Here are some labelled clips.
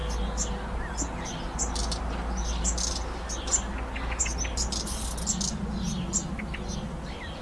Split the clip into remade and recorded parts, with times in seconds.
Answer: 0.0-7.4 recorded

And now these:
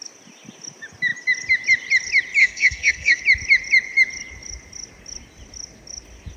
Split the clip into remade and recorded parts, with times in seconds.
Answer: 0.0-2.4 recorded; 2.4-3.2 remade; 3.2-6.4 recorded

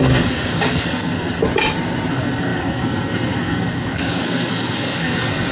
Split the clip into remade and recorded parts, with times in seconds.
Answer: 0.0-1.4 remade; 1.4-2.1 recorded; 2.1-5.5 remade

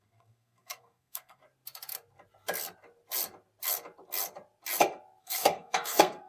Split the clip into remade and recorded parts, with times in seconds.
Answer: 0.0-1.4 remade; 1.4-5.2 recorded; 5.2-6.3 remade

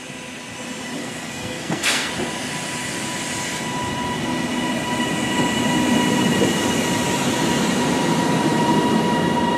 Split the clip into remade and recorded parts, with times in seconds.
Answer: 0.0-1.0 recorded; 1.0-2.1 remade; 2.1-9.6 recorded

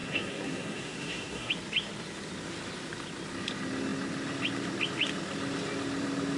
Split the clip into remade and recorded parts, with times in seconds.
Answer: 0.0-1.5 remade; 1.5-6.4 recorded

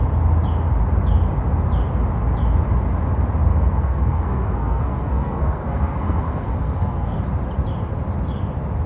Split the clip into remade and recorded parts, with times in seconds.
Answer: 0.0-3.5 recorded; 3.5-7.2 remade; 7.2-8.9 recorded